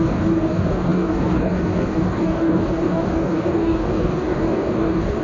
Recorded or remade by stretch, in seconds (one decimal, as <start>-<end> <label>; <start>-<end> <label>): 0.0-5.2 remade